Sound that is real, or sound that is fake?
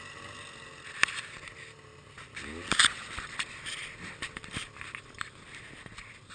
real